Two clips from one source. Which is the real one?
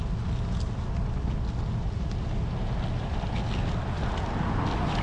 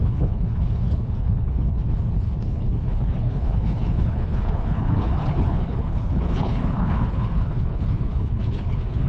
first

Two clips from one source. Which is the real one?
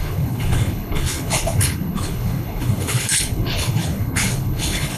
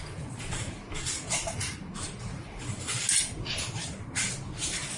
second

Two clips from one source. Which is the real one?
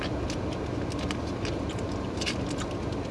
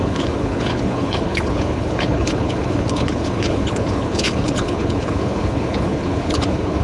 first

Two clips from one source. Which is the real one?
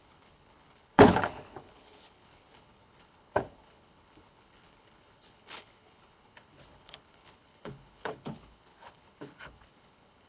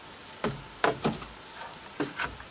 second